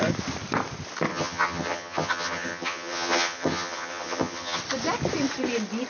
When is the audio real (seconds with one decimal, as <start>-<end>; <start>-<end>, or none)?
0.0-1.1; 4.6-5.9

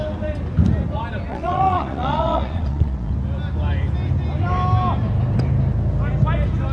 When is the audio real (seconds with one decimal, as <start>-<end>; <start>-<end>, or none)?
0.0-1.3; 3.1-6.7

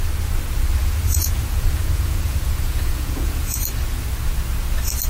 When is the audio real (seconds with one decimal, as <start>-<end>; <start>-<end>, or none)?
0.0-0.8; 3.6-5.1

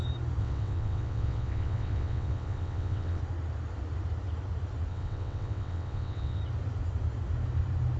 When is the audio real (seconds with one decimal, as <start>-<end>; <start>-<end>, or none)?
0.0-0.4; 3.2-4.9; 6.4-8.0

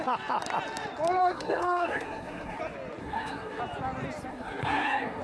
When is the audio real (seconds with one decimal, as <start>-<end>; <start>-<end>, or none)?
0.0-1.2; 2.6-3.0; 3.6-4.3

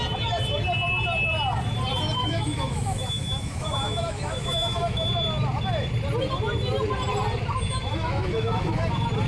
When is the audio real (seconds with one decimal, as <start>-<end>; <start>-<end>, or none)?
0.0-2.2; 5.1-7.7; 8.9-9.3